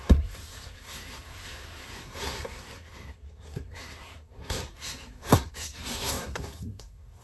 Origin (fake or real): fake